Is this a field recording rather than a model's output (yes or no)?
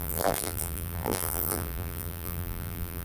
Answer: no